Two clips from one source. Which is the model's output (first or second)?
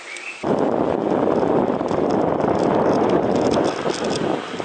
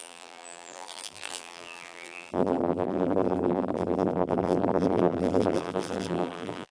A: second